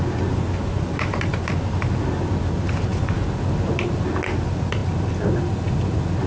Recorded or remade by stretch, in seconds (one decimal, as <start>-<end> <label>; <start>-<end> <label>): 0.0-6.3 recorded